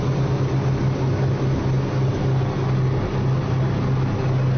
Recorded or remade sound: recorded